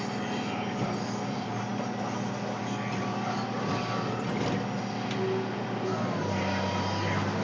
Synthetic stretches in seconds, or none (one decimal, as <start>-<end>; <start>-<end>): none